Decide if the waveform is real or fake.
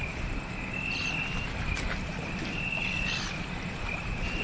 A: real